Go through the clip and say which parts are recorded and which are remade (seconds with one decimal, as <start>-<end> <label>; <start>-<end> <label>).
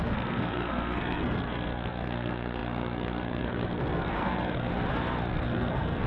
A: 0.0-4.7 remade; 4.7-5.3 recorded; 5.3-6.1 remade